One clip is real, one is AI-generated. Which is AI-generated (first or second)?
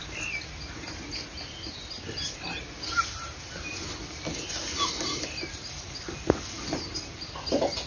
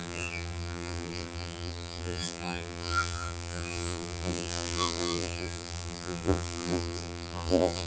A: second